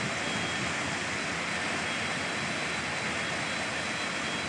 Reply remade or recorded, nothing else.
recorded